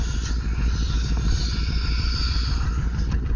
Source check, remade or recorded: recorded